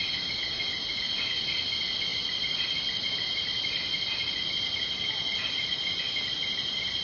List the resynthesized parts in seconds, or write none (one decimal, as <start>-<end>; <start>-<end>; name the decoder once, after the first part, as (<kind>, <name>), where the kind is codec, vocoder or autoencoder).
none